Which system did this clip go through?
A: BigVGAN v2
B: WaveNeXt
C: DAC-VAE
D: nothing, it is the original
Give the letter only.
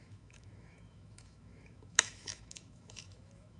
C